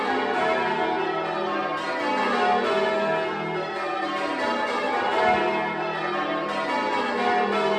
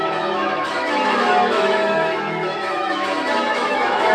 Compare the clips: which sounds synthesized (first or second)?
second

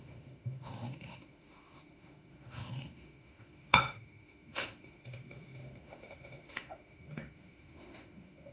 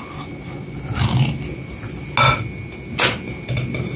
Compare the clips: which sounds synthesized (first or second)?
first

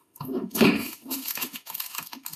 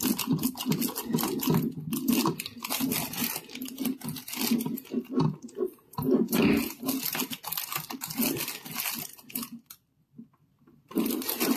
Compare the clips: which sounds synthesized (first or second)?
first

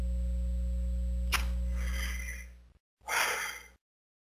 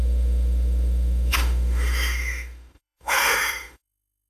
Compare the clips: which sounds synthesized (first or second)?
second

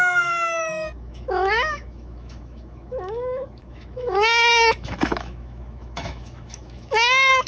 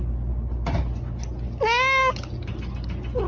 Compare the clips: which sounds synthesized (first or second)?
first